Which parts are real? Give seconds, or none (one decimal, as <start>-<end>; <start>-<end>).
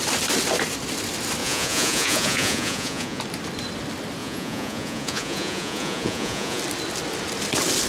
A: 0.0-1.4; 3.2-4.2; 6.6-7.9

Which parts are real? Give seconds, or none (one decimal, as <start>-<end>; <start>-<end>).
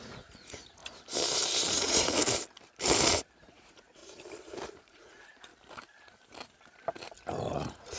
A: 0.8-1.7; 2.2-3.4; 4.0-4.7; 5.5-7.4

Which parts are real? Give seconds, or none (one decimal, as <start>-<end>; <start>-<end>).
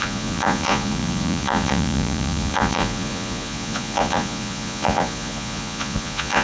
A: none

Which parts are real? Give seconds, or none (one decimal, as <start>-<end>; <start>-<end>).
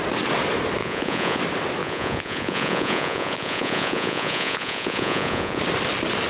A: 0.0-0.8; 1.4-1.8; 5.6-6.3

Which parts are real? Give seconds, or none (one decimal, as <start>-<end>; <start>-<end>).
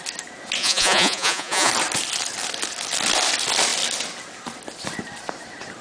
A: 0.0-0.6; 1.7-5.8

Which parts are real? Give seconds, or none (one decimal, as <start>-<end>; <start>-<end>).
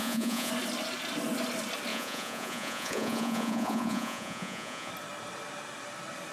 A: 0.5-1.9; 4.9-6.3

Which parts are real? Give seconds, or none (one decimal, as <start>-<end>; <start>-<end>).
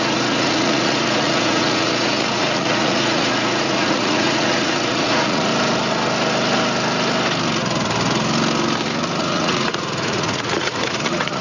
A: 5.5-9.2